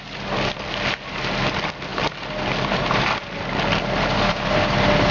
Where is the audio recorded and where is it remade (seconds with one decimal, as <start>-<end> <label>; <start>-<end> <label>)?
0.0-5.1 recorded